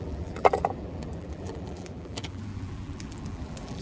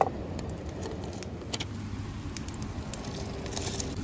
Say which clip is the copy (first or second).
first